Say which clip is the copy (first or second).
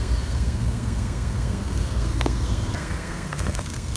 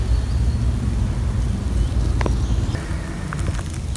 first